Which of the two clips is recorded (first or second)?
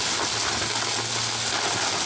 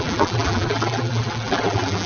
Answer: first